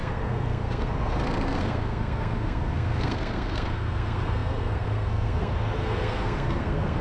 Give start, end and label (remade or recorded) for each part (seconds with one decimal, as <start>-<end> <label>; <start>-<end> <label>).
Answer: 0.0-7.0 remade